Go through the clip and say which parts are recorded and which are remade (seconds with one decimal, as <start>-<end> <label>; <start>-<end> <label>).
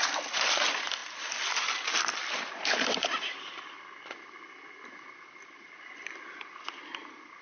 0.0-7.4 recorded